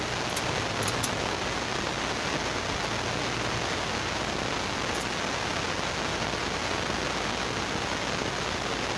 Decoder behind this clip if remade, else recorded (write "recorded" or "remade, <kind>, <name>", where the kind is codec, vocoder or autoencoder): recorded